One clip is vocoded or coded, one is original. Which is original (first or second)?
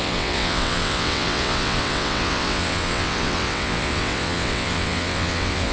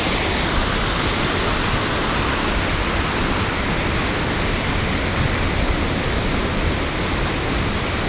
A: second